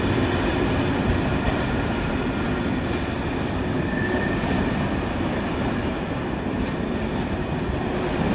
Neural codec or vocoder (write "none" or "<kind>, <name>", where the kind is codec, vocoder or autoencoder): none